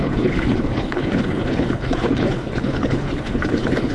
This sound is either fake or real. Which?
fake